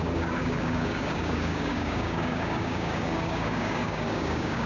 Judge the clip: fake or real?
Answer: fake